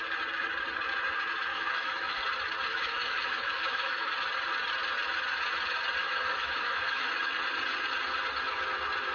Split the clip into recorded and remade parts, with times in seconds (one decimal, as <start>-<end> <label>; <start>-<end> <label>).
0.0-1.5 recorded; 1.5-2.2 remade; 2.2-2.7 recorded; 2.7-4.1 remade; 4.1-6.0 recorded; 6.0-7.2 remade; 7.2-9.1 recorded